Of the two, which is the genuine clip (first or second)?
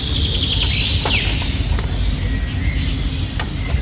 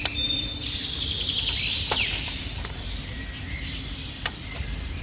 first